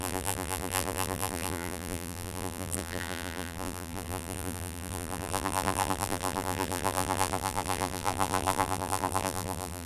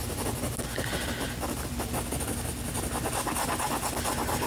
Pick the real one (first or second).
second